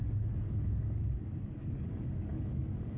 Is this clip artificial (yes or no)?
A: yes